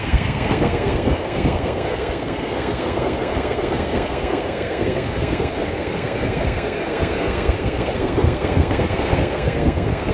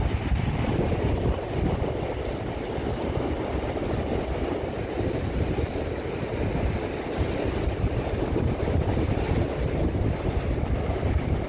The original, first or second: second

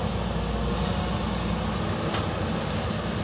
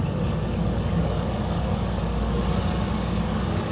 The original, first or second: first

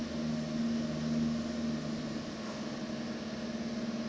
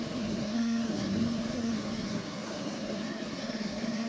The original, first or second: first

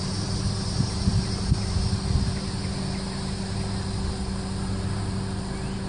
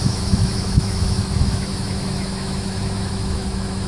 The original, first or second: first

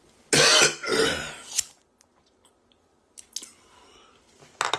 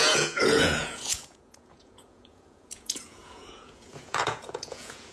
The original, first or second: first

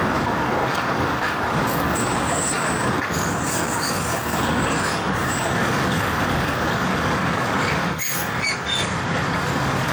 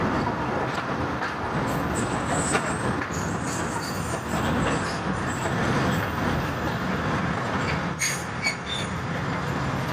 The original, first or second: second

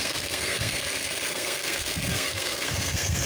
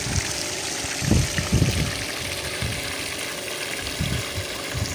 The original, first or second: second